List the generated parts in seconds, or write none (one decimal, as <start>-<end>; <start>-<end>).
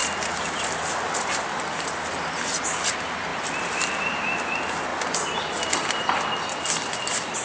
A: none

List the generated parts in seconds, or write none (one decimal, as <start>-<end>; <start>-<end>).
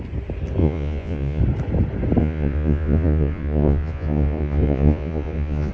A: 0.6-1.4; 2.2-5.7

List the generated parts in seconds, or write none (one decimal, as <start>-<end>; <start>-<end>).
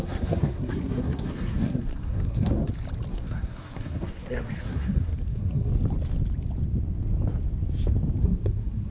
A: 0.0-2.6; 3.1-5.7; 8.2-8.9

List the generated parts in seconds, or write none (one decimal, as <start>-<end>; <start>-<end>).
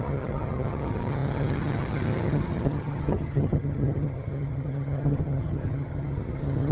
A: 0.0-6.7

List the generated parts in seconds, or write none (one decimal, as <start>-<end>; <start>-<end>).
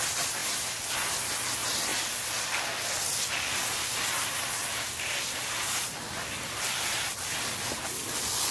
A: none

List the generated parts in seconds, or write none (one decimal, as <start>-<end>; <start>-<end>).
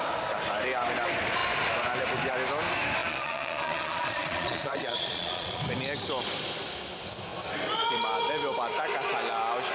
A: 3.0-5.6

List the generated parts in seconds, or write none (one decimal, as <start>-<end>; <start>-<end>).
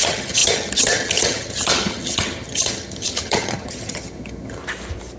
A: 0.0-4.6